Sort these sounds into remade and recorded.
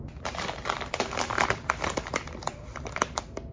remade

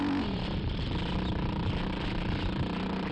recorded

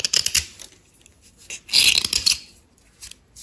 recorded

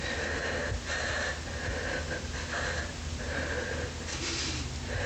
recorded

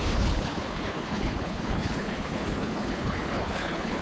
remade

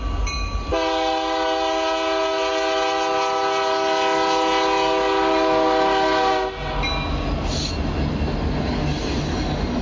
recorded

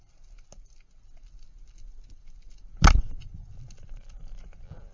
recorded